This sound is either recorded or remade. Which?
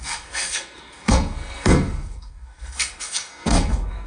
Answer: remade